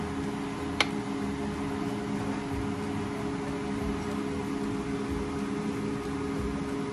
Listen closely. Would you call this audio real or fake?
real